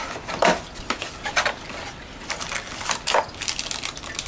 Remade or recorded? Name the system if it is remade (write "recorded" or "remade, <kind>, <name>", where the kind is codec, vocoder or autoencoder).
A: recorded